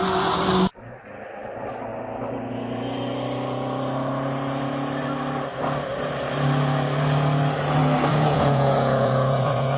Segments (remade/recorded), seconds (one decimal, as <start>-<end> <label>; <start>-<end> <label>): 0.0-8.1 recorded; 8.1-9.8 remade